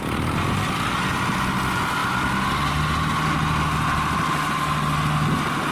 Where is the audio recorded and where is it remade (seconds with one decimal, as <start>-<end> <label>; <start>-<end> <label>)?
0.0-5.7 recorded